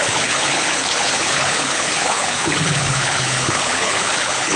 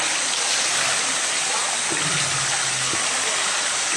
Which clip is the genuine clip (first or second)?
second